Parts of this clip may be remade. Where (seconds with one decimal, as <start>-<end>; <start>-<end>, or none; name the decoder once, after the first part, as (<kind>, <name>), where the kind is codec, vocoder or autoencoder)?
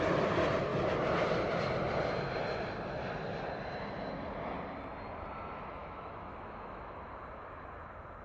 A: 5.8-6.8 (autoencoder, DAC-VAE)